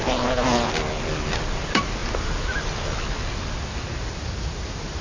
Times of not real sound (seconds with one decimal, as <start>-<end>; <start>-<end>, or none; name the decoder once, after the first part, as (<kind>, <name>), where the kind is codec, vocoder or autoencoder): none